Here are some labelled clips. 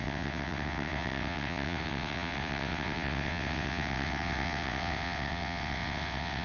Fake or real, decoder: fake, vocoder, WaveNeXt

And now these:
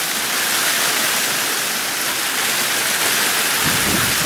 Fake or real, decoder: real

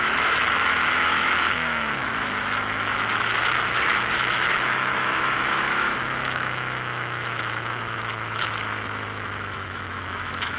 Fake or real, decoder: fake, autoencoder, DAC-VAE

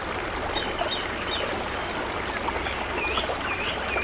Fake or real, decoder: real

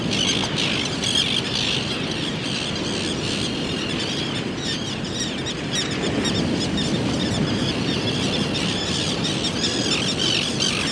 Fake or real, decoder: real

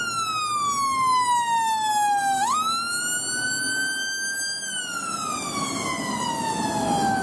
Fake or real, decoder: real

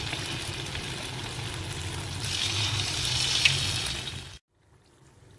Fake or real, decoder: real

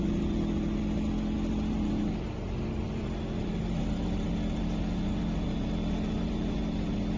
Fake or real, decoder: real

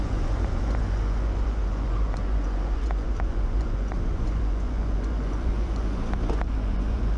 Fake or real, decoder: fake, vocoder, Vocos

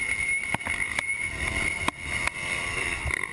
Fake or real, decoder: real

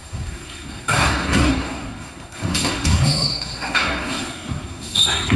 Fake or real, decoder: fake, codec, SNAC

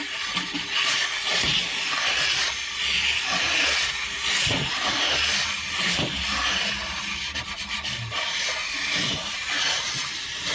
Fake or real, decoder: real